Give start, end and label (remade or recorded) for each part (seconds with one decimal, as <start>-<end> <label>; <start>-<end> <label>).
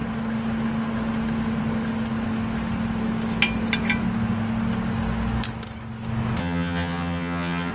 0.0-6.4 recorded; 6.4-7.7 remade